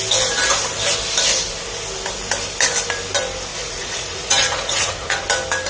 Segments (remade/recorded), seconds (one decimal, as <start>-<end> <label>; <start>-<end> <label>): 0.0-3.5 recorded; 3.5-5.2 remade; 5.2-5.7 recorded